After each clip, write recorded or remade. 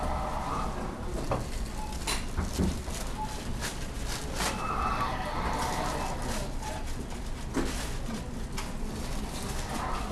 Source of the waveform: recorded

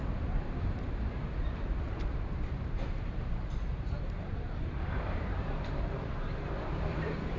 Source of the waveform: remade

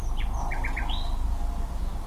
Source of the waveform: recorded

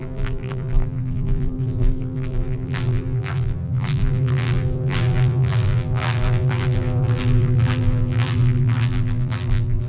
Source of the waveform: remade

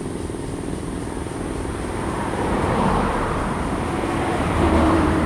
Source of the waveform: remade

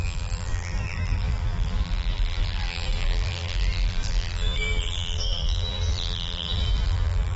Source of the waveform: remade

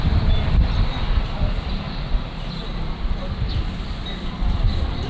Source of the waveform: remade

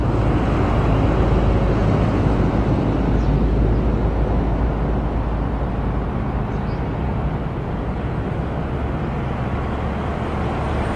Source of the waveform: recorded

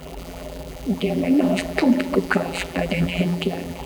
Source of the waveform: remade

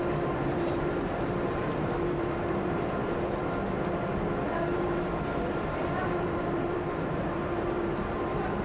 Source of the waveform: remade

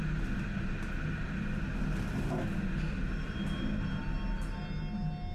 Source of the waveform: recorded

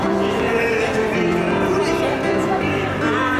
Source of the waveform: remade